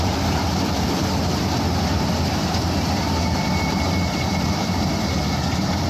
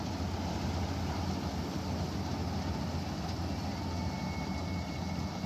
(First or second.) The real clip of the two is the second